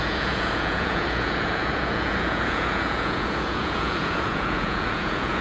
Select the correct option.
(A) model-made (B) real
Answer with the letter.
A